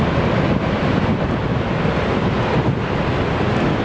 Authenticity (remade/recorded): recorded